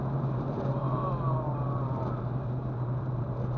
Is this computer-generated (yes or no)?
yes